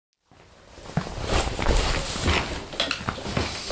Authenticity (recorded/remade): recorded